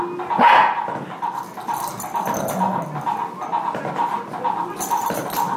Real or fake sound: real